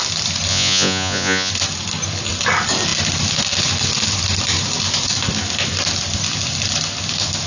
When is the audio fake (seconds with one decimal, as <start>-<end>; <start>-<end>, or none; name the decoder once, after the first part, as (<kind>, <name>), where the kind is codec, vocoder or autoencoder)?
0.5-1.5 (vocoder, Vocos)